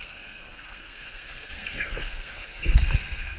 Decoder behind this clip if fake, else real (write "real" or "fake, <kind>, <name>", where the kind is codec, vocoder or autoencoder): fake, codec, SNAC